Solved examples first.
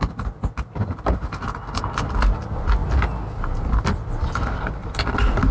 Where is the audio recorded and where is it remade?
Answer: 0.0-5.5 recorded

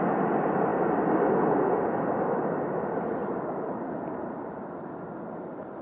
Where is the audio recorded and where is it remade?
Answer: 0.0-3.2 recorded; 3.2-5.1 remade; 5.1-5.8 recorded

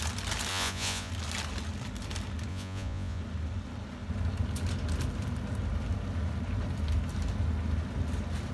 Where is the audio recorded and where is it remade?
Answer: 0.0-0.5 recorded; 0.5-1.1 remade; 1.1-2.5 recorded; 2.5-3.2 remade; 3.2-8.5 recorded

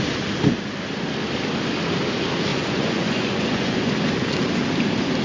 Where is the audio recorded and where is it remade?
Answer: 0.0-2.5 recorded; 2.5-3.9 remade; 3.9-5.2 recorded

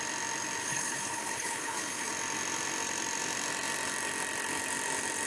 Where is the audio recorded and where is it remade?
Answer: 0.0-0.6 recorded; 0.6-2.1 remade; 2.1-5.3 recorded

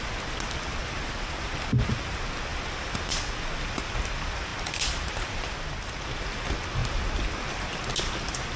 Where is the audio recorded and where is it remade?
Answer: 0.0-8.6 recorded